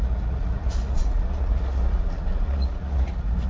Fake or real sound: fake